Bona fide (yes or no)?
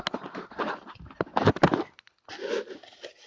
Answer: yes